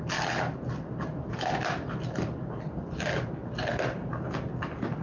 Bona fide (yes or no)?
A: yes